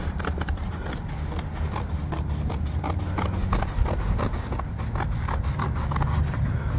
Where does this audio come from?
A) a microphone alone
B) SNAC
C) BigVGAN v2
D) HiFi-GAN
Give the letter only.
A